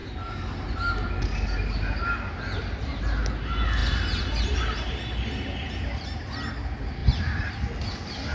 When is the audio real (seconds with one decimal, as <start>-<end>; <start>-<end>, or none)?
0.0-3.8; 4.9-7.0; 7.5-8.3